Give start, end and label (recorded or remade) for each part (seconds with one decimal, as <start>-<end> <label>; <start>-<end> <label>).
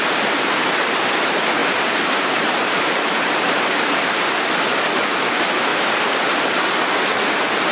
0.0-1.6 recorded; 1.6-4.4 remade; 4.4-5.7 recorded; 5.7-6.4 remade; 6.4-7.7 recorded